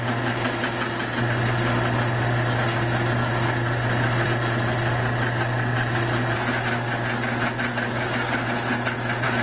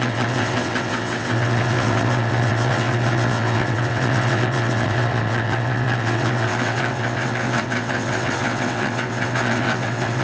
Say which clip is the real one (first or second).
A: first